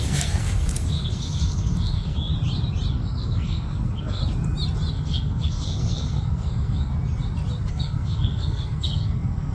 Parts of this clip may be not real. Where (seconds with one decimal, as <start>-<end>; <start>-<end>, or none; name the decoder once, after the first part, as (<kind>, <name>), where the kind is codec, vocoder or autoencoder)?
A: 0.0-2.3 (codec, SNAC); 2.9-4.2; 4.9-6.9; 7.7-9.5